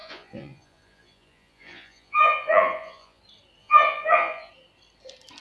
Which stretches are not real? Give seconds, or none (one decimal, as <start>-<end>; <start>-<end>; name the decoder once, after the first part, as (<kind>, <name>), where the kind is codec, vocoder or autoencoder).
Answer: 0.0-3.2 (vocoder, Vocos); 3.6-4.5